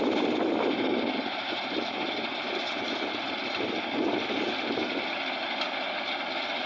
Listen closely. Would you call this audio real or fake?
real